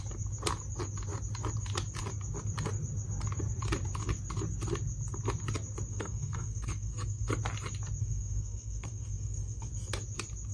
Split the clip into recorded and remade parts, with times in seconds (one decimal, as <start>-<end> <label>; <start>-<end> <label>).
0.0-5.9 recorded; 5.9-7.3 remade; 7.3-8.0 recorded; 8.0-9.7 remade; 9.7-10.5 recorded